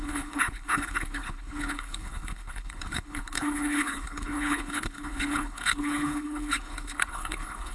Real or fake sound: fake